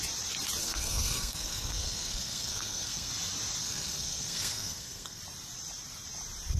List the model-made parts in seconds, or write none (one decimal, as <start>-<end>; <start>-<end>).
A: 0.6-3.1; 3.6-5.2